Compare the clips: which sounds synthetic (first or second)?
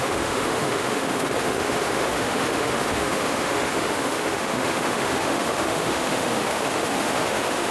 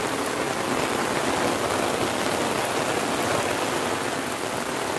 first